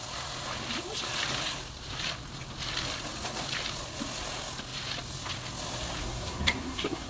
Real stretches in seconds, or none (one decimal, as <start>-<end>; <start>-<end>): 0.0-6.0